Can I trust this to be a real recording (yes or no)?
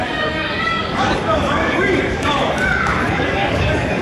no